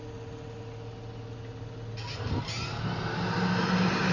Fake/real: real